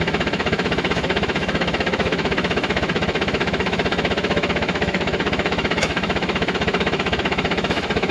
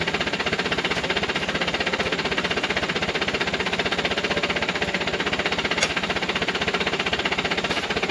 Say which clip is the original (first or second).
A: second